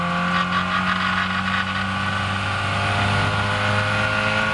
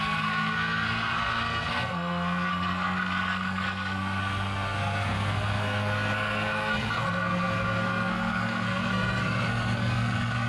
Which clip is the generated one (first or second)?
second